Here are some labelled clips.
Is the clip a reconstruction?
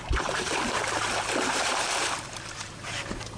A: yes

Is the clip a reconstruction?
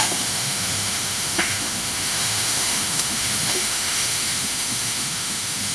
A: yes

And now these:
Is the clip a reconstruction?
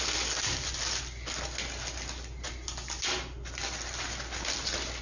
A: no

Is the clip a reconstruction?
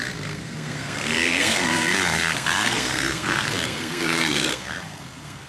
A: yes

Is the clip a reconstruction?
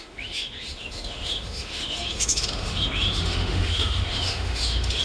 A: yes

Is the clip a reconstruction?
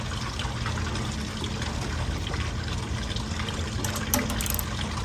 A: no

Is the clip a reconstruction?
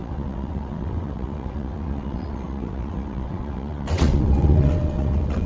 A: yes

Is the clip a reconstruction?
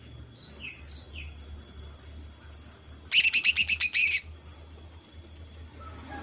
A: no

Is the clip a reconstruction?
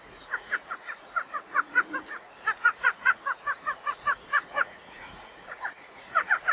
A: yes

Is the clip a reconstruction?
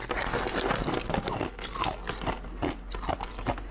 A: no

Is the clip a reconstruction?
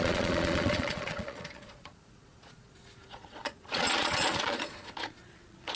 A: yes